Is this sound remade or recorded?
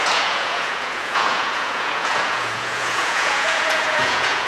remade